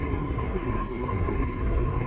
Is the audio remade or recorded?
remade